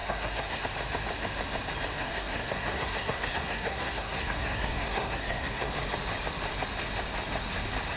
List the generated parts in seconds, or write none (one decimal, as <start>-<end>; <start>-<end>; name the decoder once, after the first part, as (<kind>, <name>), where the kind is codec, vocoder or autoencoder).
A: 0.0-0.6 (codec, SNAC); 2.0-5.7